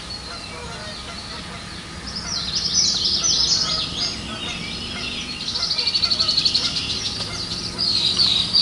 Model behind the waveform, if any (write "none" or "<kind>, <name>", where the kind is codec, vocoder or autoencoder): none